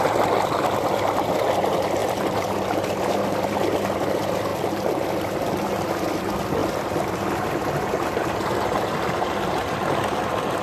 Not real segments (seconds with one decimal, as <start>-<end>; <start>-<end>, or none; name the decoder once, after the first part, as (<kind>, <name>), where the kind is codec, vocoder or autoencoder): 2.0-3.6 (vocoder, BigVGAN v2)